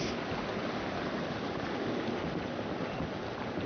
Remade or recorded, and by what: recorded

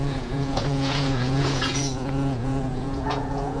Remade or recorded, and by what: remade, vocoder, Vocos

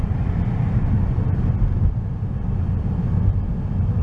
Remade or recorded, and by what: recorded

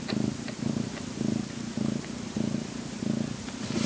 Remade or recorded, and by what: recorded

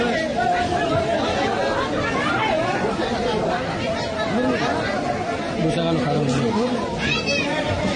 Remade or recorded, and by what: recorded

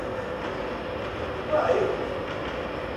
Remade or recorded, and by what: recorded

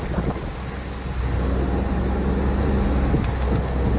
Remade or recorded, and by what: recorded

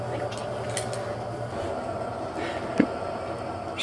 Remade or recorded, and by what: recorded